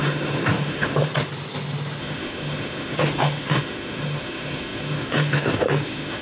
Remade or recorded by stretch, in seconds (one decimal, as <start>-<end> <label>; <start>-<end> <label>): 0.0-1.1 remade; 1.1-2.0 recorded; 2.0-6.2 remade